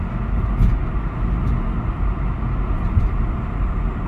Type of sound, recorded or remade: recorded